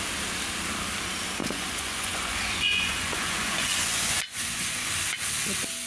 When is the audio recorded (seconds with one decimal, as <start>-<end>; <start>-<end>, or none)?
0.0-1.4; 4.9-5.9